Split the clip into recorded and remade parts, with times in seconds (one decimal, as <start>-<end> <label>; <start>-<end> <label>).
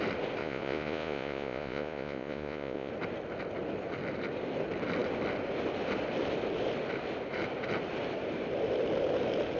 0.0-0.4 recorded; 0.4-2.9 remade; 2.9-9.6 recorded